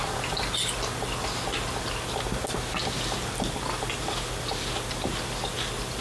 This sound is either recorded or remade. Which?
recorded